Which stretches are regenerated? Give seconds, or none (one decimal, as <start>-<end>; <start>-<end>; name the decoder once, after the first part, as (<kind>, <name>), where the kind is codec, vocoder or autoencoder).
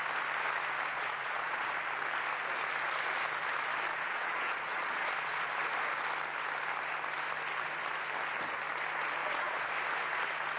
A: 0.9-1.7 (vocoder, Vocos); 3.9-5.5; 9.2-9.7